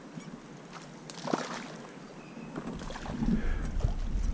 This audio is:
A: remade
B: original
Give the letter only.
B